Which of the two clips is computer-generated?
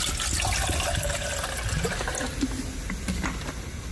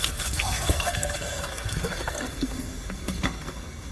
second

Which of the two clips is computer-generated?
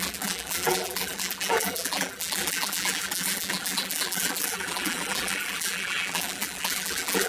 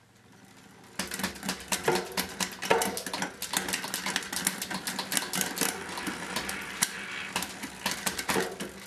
first